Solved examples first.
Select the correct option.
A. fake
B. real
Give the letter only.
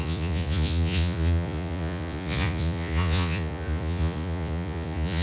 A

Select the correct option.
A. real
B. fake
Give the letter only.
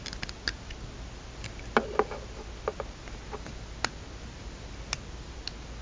A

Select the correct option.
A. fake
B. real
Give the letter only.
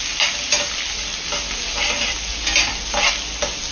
B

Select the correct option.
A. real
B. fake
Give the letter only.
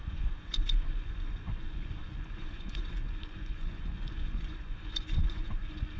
B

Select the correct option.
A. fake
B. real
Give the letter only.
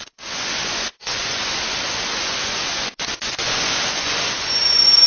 A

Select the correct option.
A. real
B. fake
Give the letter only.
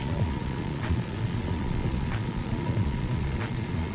B